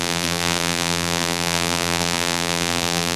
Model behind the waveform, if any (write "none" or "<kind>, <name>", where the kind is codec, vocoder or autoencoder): vocoder, BigVGAN v2